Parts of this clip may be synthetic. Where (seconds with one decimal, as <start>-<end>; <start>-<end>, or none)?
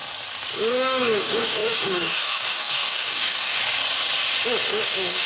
0.7-3.6; 4.7-5.3